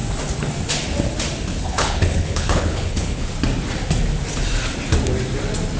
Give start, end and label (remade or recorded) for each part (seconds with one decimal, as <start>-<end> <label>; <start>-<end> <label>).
0.0-1.5 recorded; 1.5-3.3 remade; 3.3-5.8 recorded